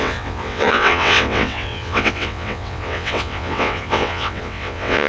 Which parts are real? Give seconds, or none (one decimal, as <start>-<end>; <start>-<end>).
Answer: none